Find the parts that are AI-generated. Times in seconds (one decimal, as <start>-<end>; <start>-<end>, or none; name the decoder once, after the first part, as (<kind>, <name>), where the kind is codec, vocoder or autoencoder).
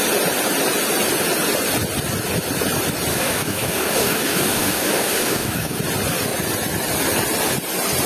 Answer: 3.1-5.8 (codec, DAC)